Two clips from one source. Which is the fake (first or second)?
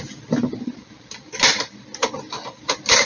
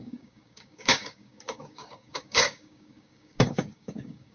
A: second